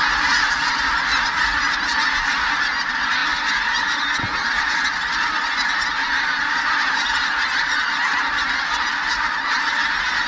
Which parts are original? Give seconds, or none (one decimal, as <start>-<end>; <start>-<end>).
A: 0.0-10.3